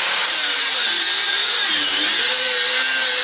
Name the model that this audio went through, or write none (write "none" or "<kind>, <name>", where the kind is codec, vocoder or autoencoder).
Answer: vocoder, BigVGAN v2